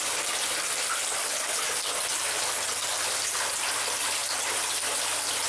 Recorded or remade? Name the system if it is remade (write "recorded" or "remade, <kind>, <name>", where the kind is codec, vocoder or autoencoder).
recorded